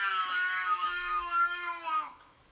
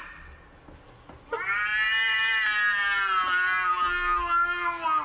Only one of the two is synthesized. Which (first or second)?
first